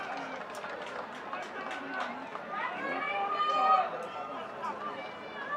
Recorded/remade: recorded